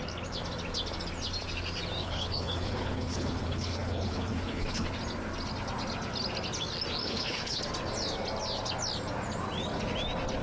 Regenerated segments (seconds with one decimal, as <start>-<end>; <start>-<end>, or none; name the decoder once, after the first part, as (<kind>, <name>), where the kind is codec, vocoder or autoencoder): 2.0-4.9 (codec, HILCodec); 7.0-7.6